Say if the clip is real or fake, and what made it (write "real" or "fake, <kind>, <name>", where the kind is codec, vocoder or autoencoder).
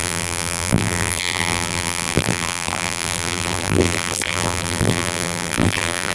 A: fake, vocoder, BigVGAN v2